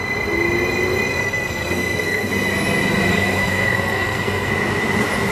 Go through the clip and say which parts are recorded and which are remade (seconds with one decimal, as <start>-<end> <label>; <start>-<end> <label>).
0.0-1.1 recorded; 1.1-2.3 remade; 2.3-3.1 recorded; 3.1-4.5 remade; 4.5-5.3 recorded